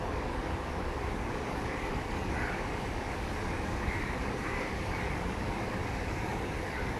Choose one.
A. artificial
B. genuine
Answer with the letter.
A